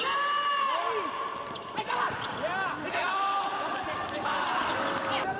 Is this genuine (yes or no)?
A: yes